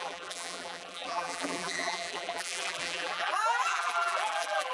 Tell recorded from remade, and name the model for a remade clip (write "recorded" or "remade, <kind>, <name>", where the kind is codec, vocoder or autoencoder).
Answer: remade, vocoder, BigVGAN v2